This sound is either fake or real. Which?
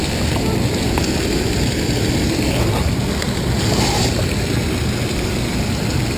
real